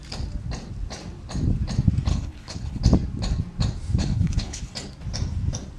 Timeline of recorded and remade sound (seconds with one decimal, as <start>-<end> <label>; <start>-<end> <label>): 0.0-2.1 recorded; 2.1-2.8 remade; 2.8-4.0 recorded; 4.0-4.7 remade; 4.7-5.8 recorded